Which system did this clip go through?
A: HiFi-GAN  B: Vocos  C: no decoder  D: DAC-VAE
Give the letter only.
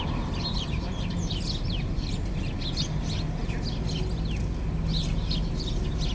C